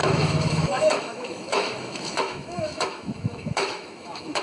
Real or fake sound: fake